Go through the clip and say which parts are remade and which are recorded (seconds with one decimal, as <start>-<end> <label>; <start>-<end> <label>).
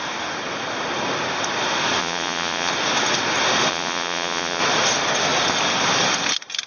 0.0-2.0 recorded; 2.0-2.7 remade; 2.7-3.7 recorded; 3.7-4.6 remade; 4.6-6.7 recorded